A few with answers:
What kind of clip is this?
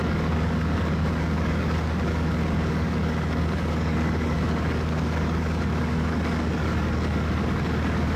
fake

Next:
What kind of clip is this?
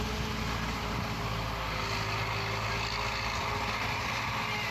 real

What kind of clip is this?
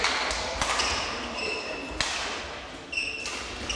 real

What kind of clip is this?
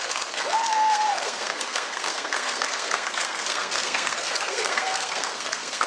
fake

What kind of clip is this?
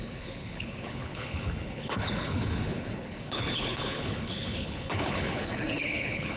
fake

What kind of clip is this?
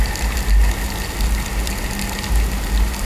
real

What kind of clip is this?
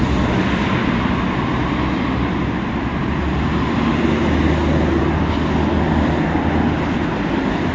real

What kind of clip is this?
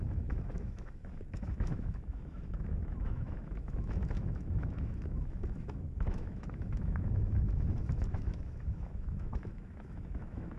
fake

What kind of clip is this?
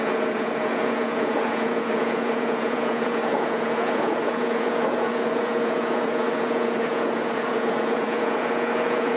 fake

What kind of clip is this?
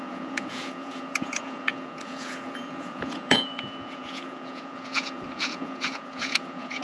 fake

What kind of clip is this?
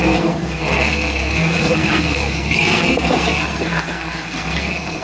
fake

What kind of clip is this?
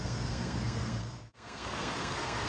fake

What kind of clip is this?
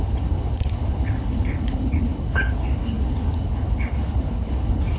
fake